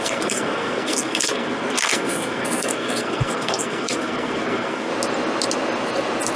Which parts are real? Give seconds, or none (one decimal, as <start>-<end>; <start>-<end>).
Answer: 4.9-6.4